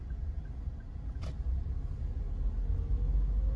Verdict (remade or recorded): recorded